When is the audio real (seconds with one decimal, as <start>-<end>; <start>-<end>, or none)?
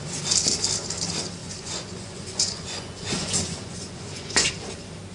0.0-1.4; 4.5-5.1